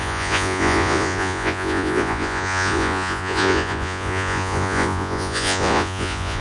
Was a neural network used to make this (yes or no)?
yes